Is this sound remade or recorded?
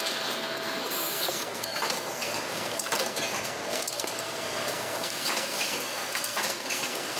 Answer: remade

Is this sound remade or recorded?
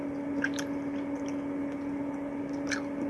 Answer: recorded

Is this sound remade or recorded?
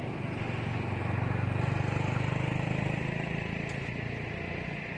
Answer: recorded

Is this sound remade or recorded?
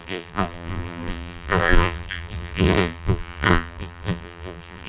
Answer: remade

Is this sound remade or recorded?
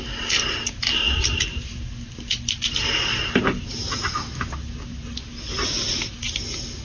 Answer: recorded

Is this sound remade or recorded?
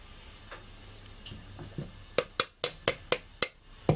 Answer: recorded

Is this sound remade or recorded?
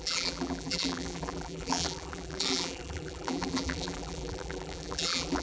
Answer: remade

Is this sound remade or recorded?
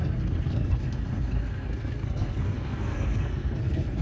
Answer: remade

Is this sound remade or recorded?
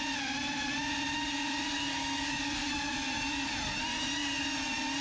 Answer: recorded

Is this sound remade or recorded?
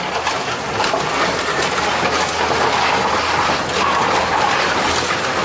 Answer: recorded